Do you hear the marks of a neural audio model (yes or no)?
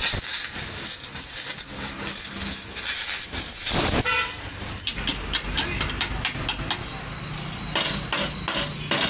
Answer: no